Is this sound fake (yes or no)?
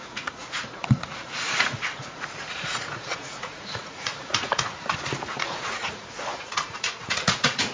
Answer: yes